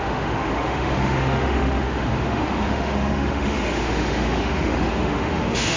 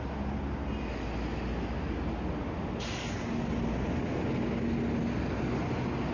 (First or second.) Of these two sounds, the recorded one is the second